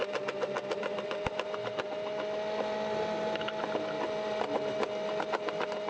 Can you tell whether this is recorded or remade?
recorded